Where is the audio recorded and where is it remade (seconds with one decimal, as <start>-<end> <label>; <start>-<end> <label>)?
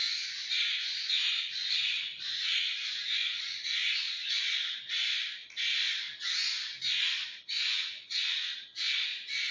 0.0-5.1 remade; 5.1-6.4 recorded; 6.4-8.5 remade; 8.5-9.5 recorded